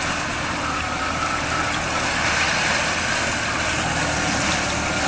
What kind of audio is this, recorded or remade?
recorded